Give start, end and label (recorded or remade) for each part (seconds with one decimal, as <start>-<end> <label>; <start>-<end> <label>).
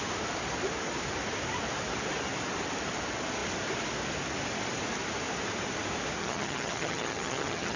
0.0-6.2 recorded; 6.2-7.8 remade